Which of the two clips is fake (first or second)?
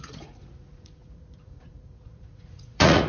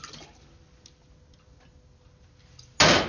first